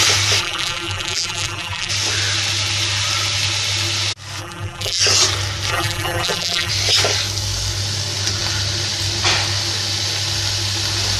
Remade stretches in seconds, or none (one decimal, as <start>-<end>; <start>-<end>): 0.4-1.9; 4.4-5.0; 5.7-6.7